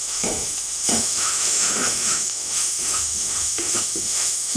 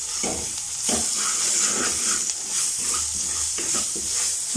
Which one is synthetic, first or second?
first